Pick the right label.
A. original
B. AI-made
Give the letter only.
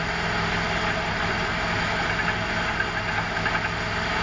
A